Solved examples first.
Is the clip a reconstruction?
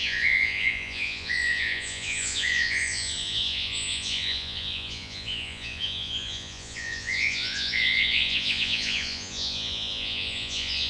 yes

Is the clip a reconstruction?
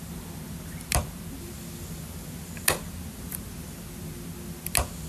no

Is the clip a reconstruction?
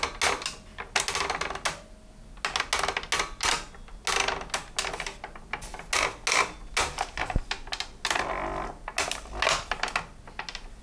no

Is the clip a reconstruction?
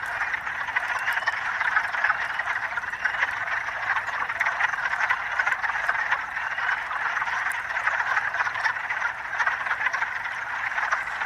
no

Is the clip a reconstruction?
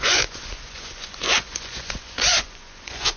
yes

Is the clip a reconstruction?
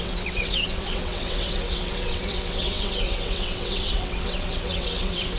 yes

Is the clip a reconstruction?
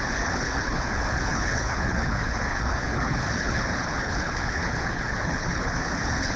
yes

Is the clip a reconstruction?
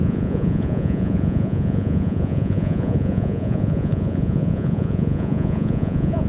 yes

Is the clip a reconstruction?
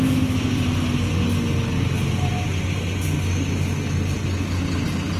no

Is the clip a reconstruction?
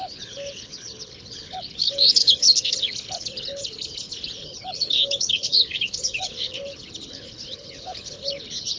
yes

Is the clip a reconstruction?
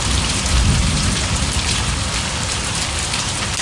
yes